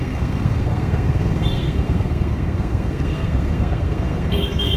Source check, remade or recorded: remade